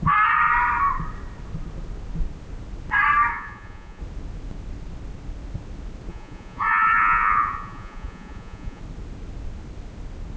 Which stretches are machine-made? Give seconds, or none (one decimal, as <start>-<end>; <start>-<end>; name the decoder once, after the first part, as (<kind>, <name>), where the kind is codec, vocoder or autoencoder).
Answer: 3.3-4.0 (vocoder, Vocos); 6.1-8.8